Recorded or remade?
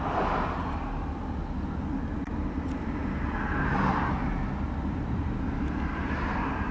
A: recorded